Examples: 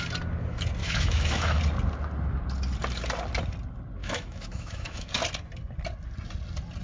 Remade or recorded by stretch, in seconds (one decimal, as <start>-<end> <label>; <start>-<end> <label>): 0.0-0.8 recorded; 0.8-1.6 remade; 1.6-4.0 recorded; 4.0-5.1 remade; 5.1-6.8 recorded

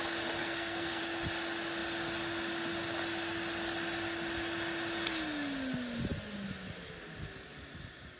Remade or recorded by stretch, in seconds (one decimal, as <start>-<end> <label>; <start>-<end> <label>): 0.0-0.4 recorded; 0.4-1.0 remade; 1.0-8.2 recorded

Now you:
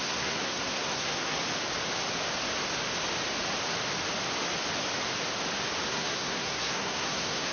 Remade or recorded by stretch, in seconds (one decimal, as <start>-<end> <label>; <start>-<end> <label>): 0.0-1.4 remade; 1.4-5.9 recorded; 5.9-7.5 remade